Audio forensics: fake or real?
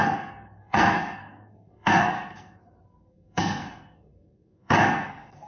fake